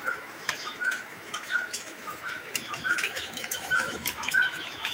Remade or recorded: remade